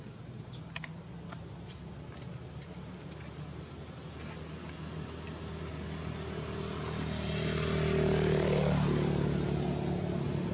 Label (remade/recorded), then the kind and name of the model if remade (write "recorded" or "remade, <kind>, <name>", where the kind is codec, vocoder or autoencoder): recorded